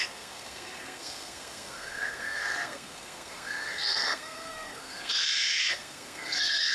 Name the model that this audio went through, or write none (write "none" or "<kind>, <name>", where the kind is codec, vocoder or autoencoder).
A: codec, SNAC